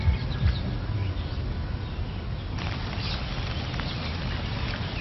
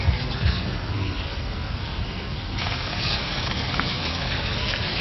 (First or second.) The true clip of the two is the first